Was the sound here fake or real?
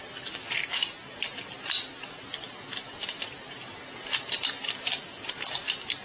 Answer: real